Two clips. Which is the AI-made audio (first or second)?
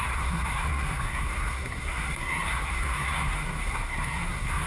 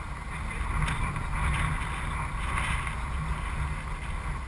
first